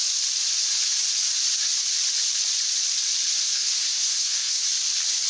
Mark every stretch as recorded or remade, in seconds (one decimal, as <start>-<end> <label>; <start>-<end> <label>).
0.0-3.4 recorded; 3.4-4.6 remade; 4.6-5.3 recorded